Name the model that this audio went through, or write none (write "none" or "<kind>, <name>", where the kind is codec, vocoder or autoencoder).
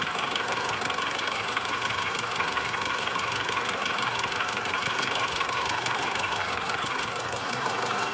codec, SNAC